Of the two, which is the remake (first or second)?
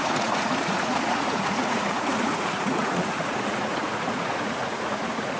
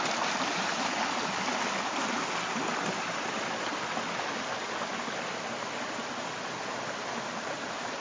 first